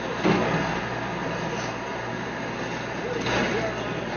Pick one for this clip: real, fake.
real